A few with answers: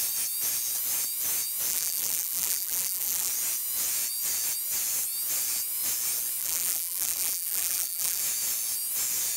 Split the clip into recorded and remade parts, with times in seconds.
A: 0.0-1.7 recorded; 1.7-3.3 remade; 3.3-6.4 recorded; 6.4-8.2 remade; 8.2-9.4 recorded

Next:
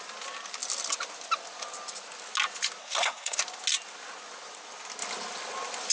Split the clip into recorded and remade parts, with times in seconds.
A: 0.0-2.8 recorded; 2.8-3.4 remade; 3.4-5.9 recorded

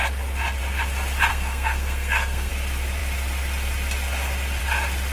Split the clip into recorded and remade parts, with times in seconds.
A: 0.0-1.3 recorded; 1.3-2.5 remade; 2.5-5.1 recorded

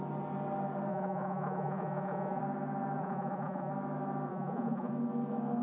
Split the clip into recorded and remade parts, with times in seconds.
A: 0.0-0.9 recorded; 0.9-2.4 remade; 2.4-3.0 recorded; 3.0-3.7 remade; 3.7-4.3 recorded; 4.3-4.9 remade; 4.9-5.6 recorded

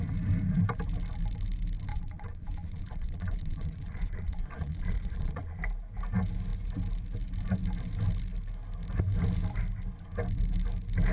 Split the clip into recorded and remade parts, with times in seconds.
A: 0.0-1.9 recorded; 1.9-5.6 remade; 5.6-11.1 recorded

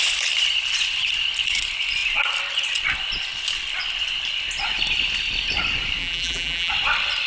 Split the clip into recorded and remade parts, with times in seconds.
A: 0.0-6.0 recorded; 6.0-6.7 remade; 6.7-7.3 recorded

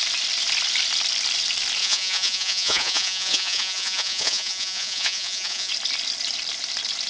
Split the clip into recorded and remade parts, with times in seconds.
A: 0.0-1.8 recorded; 1.8-5.7 remade; 5.7-7.1 recorded

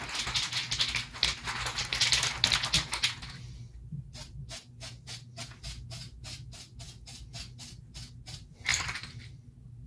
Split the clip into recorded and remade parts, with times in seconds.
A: 0.0-8.7 recorded; 8.7-9.2 remade; 9.2-9.9 recorded